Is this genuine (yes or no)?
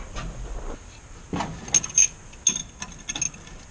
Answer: yes